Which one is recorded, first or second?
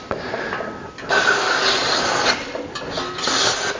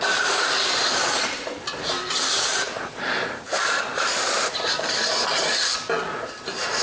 first